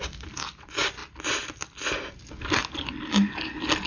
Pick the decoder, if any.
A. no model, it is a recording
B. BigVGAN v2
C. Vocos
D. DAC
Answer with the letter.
A